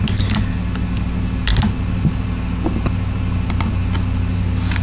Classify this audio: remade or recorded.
recorded